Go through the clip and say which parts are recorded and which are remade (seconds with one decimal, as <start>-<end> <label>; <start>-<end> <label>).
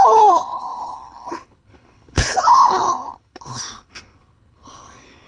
0.0-5.3 remade